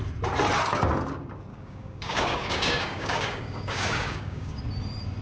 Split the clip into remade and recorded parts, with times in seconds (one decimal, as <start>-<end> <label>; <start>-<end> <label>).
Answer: 0.0-1.5 recorded; 1.5-4.6 remade; 4.6-5.2 recorded